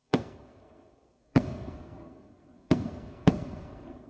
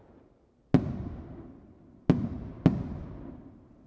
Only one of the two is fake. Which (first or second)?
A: first